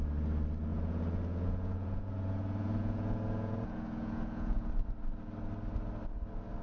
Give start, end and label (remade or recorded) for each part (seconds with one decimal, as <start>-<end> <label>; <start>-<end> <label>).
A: 0.0-0.7 recorded; 0.7-4.7 remade; 4.7-6.6 recorded